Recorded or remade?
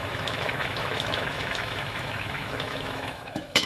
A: remade